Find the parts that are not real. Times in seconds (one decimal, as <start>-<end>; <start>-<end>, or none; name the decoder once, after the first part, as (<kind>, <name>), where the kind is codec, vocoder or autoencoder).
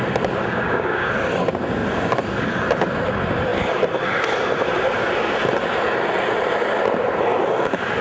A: 0.4-1.1 (codec, DAC)